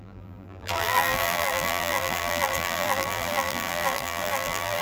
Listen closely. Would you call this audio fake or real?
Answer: fake